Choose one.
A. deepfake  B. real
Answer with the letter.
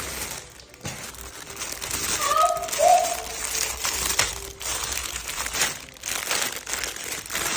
B